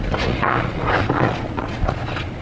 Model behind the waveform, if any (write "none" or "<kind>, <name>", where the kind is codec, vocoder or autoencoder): vocoder, Vocos